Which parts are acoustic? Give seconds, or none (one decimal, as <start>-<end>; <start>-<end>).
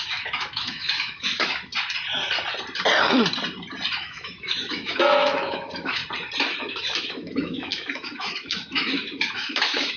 1.7-4.0; 6.0-6.6